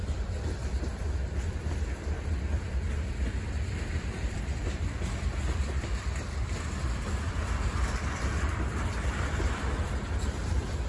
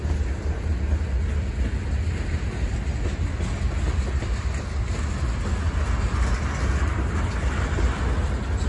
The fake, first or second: first